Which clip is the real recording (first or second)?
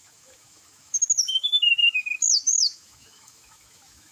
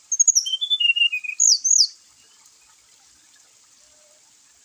second